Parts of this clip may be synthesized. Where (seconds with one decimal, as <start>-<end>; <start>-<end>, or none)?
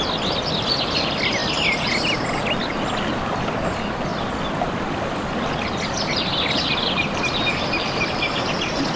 none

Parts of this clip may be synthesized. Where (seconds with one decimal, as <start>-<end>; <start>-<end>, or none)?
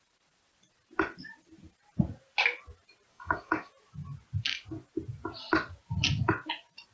3.1-3.7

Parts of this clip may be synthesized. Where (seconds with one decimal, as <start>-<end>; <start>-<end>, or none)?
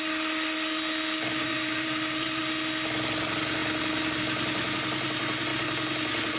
1.4-2.4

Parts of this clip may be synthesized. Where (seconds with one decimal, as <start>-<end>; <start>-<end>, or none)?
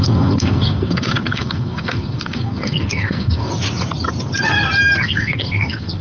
0.0-3.5; 5.0-6.0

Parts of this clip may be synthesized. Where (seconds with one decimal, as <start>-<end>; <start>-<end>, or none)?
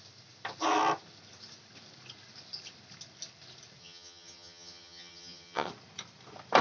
3.8-5.7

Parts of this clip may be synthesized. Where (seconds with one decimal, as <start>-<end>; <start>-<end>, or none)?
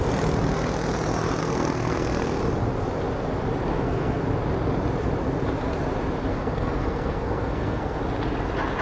1.4-2.4; 3.7-4.2; 6.3-8.0